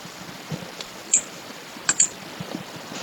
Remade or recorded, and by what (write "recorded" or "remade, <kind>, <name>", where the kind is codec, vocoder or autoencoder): remade, vocoder, BigVGAN v2